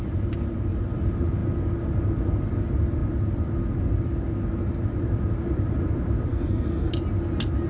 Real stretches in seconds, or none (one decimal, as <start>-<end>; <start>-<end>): 0.0-6.3; 6.9-7.7